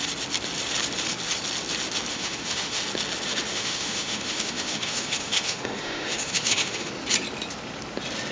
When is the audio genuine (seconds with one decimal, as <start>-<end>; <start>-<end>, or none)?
0.0-2.1; 2.8-3.5; 6.9-8.3